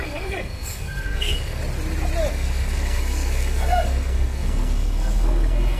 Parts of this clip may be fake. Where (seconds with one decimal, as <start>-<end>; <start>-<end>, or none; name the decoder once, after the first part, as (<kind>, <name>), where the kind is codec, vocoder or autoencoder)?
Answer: 0.0-1.6 (codec, SNAC); 2.3-5.8